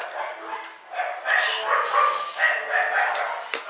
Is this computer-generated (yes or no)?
no